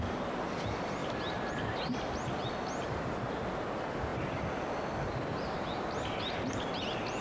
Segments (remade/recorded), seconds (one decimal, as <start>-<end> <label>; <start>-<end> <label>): 0.0-7.2 recorded